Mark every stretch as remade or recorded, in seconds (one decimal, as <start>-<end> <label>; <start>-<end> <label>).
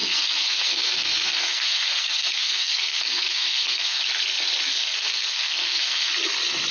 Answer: 0.0-4.0 remade; 4.0-4.7 recorded; 4.7-6.1 remade; 6.1-6.7 recorded